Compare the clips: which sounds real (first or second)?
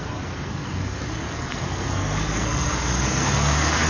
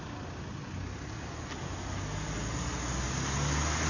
second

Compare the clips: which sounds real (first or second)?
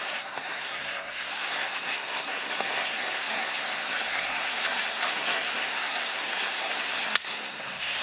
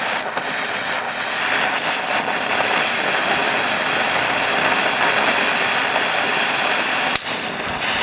second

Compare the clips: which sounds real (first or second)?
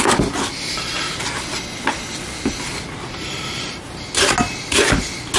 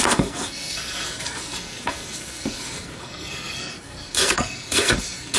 first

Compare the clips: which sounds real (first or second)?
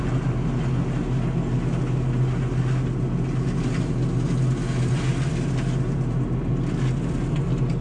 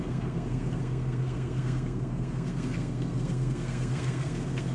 first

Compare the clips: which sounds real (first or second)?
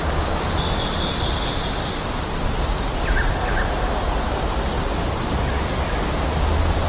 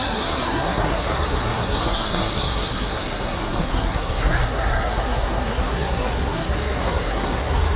first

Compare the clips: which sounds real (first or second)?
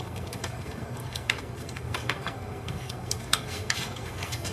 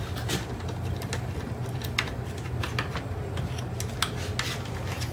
second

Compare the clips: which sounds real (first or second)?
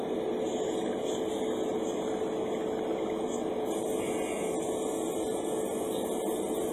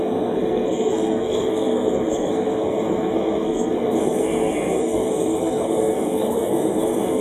first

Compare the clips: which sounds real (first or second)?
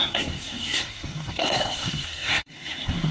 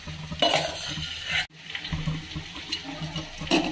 second